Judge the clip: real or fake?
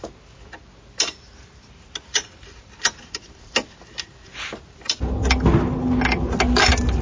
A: real